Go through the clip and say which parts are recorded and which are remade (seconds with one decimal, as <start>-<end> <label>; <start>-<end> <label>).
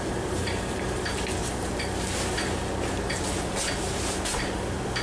0.0-5.0 recorded